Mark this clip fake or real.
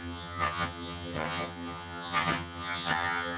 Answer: fake